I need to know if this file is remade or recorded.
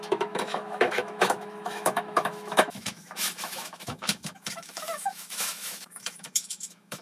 remade